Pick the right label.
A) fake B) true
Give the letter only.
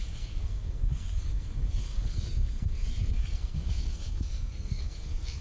A